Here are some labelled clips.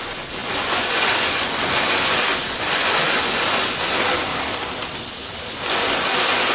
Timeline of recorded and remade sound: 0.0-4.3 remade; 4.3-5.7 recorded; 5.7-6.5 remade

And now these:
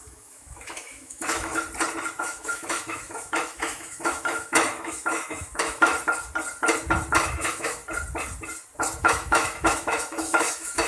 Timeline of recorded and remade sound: 0.0-1.5 remade; 1.5-2.2 recorded; 2.2-5.9 remade; 5.9-7.2 recorded; 7.2-7.8 remade; 7.8-9.0 recorded; 9.0-10.9 remade

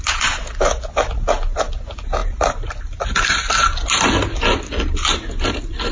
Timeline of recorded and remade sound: 0.0-5.9 recorded